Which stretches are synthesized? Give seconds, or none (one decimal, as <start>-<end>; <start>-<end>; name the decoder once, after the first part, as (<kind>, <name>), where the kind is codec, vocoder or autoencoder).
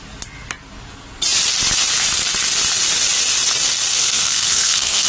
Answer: 3.9-5.1 (codec, SNAC)